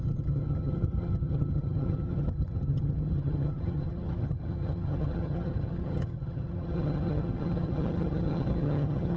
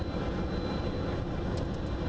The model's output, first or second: first